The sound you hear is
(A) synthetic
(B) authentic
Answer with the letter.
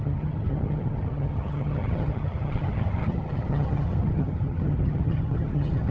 A